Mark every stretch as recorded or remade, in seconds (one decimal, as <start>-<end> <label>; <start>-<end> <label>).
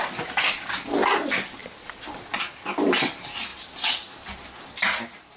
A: 0.0-5.4 recorded